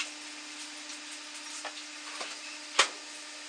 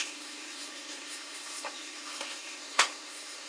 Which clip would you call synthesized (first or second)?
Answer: second